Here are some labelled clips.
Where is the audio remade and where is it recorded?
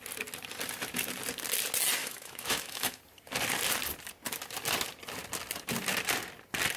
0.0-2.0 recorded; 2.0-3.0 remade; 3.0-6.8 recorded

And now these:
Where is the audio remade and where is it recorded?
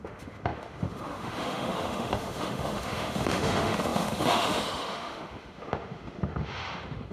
0.0-7.1 remade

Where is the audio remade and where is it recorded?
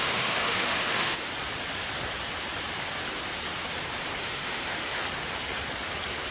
0.0-1.3 remade; 1.3-4.2 recorded; 4.2-5.0 remade; 5.0-6.3 recorded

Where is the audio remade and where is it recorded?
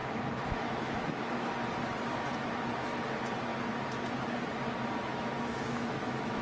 0.0-1.5 remade; 1.5-5.1 recorded; 5.1-6.4 remade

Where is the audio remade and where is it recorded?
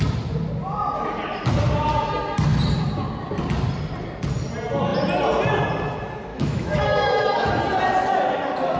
0.0-6.3 recorded; 6.3-7.6 remade; 7.6-8.8 recorded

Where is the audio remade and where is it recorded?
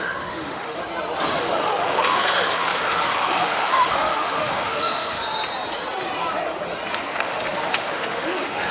0.0-0.8 remade; 0.8-1.4 recorded; 1.4-5.2 remade; 5.2-7.1 recorded; 7.1-8.7 remade